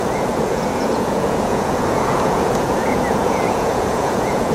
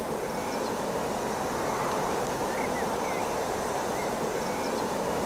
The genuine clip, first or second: second